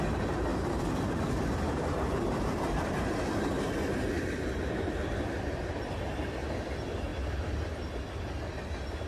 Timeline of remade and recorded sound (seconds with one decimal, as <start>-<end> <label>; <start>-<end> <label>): 0.0-0.5 recorded; 0.5-4.4 remade; 4.4-9.1 recorded